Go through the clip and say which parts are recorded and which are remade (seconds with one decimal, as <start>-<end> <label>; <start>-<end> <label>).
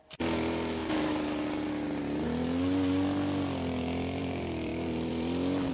0.0-0.8 remade; 0.8-4.2 recorded; 4.2-5.7 remade